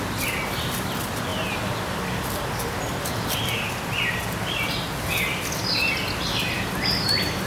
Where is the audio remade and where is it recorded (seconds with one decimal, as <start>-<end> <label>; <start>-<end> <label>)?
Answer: 0.0-7.5 recorded